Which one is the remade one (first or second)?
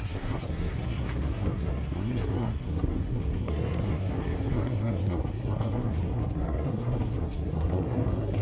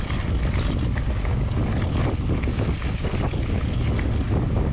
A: first